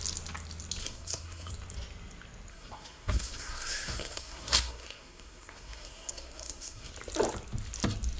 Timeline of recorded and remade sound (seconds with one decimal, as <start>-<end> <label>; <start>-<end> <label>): 0.0-0.8 recorded; 0.8-1.5 remade; 1.5-2.5 recorded; 2.5-6.9 remade; 6.9-8.2 recorded